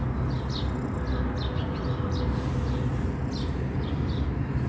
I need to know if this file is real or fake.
real